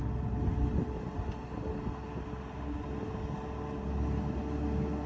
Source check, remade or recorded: recorded